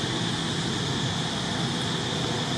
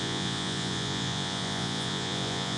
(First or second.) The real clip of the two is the first